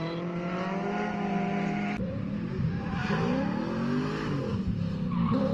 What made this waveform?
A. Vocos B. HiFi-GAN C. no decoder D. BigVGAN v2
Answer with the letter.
C